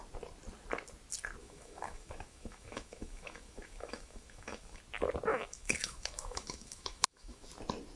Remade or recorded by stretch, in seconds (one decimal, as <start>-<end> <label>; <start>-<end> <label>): 0.0-1.4 recorded; 1.4-4.8 remade; 4.8-5.3 recorded; 5.3-7.5 remade; 7.5-8.0 recorded